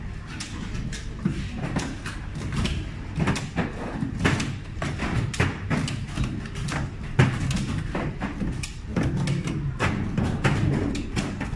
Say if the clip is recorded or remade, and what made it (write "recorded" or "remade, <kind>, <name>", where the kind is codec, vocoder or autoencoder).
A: recorded